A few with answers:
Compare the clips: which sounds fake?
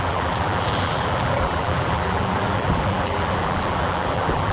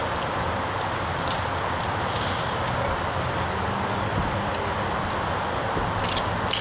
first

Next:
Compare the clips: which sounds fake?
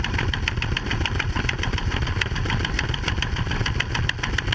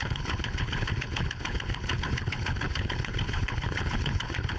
second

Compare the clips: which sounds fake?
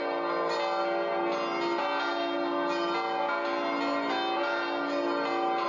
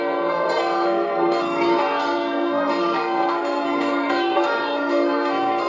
second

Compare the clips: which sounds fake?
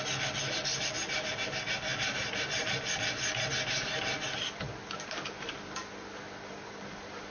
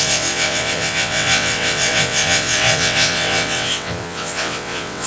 second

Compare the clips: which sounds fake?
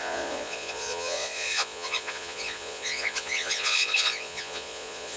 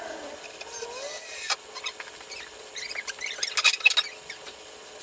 first